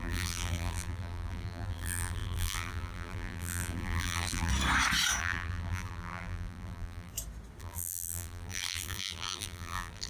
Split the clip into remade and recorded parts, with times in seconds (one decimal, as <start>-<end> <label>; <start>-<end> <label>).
0.0-4.5 remade; 4.5-5.2 recorded; 5.2-7.1 remade; 7.1-7.6 recorded; 7.6-10.1 remade

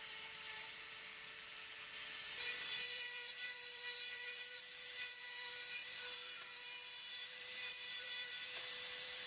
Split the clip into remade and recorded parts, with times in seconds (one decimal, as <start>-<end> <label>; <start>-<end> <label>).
0.0-1.6 remade; 1.6-2.1 recorded; 2.1-9.3 remade

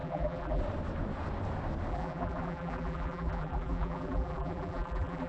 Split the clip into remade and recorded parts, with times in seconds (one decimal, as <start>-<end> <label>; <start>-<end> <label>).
0.0-0.6 remade; 0.6-1.9 recorded; 1.9-5.3 remade

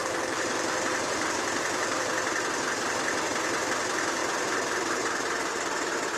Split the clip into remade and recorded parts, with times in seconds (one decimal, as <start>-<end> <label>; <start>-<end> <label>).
0.0-2.1 remade; 2.1-6.2 recorded

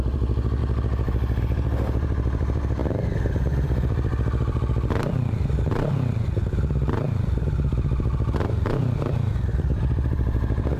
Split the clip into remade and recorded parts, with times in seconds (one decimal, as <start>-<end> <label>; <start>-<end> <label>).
0.0-0.6 remade; 0.6-1.4 recorded; 1.4-10.8 remade

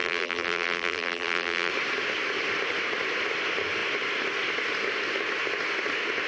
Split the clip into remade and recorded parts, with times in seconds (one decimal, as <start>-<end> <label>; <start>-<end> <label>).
0.0-1.7 remade; 1.7-6.3 recorded

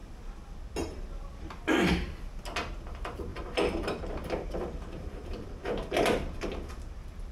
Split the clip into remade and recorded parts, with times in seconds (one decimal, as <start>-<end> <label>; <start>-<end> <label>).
0.0-3.3 recorded; 3.3-6.7 remade; 6.7-7.3 recorded

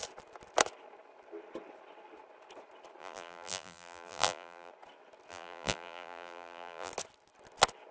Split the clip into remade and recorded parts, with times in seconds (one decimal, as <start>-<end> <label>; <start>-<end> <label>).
0.0-3.0 recorded; 3.0-4.7 remade; 4.7-5.3 recorded; 5.3-6.9 remade; 6.9-7.9 recorded